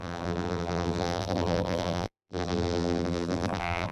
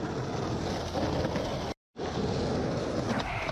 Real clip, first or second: second